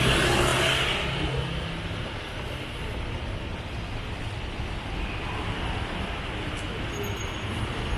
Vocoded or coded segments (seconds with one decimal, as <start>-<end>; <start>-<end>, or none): none